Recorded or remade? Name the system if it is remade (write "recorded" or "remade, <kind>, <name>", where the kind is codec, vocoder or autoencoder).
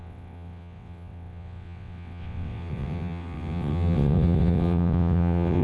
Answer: remade, vocoder, WaveNeXt